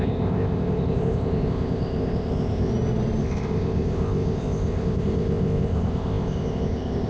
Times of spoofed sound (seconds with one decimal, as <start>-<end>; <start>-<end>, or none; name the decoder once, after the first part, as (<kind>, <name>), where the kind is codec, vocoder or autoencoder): 0.0-2.7 (codec, ZipCodec); 3.2-7.1